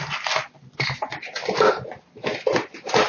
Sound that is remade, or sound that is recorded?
recorded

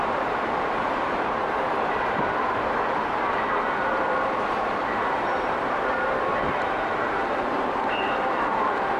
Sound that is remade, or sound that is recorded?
remade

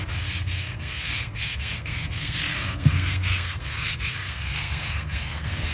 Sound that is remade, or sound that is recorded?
remade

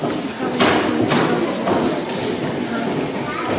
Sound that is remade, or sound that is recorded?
recorded